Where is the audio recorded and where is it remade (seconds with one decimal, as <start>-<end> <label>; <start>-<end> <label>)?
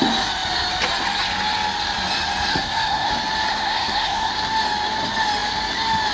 0.0-2.5 recorded; 2.5-3.1 remade; 3.1-3.5 recorded; 3.5-4.3 remade; 4.3-6.1 recorded